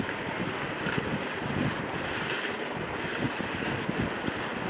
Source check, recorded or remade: recorded